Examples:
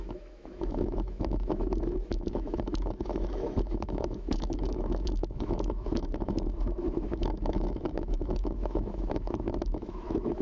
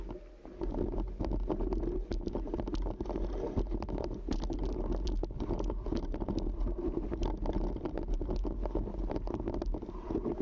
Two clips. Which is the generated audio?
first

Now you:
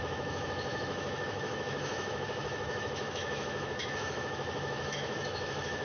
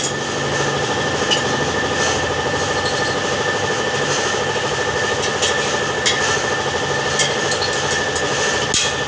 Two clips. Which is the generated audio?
first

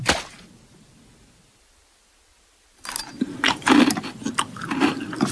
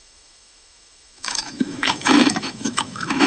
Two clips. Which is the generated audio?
second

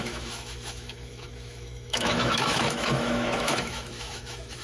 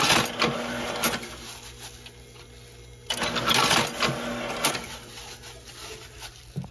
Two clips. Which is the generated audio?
first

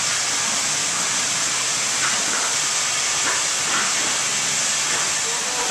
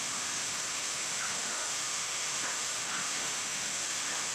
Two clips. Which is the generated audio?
second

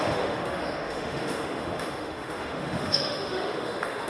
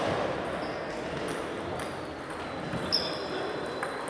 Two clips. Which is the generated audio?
first